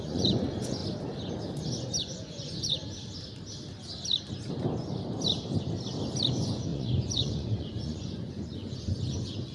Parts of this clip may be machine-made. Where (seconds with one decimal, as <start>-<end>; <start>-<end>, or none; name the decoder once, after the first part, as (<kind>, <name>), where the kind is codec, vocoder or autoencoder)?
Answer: 0.0-0.8 (vocoder, Vocos); 2.0-2.8; 6.3-9.5